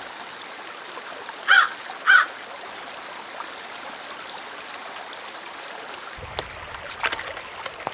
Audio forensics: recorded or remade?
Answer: recorded